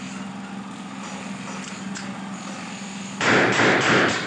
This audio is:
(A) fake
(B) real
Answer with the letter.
B